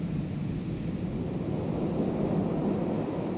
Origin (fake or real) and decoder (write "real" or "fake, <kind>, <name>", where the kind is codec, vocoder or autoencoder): real